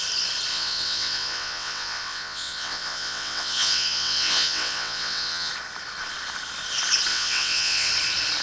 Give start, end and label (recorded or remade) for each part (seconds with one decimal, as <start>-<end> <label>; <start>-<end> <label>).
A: 0.0-0.5 recorded; 0.5-5.5 remade; 5.5-7.1 recorded; 7.1-7.9 remade; 7.9-8.4 recorded